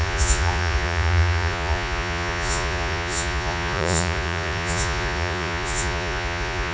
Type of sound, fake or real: fake